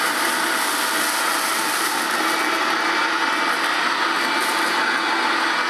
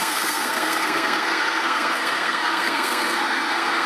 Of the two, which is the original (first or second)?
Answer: first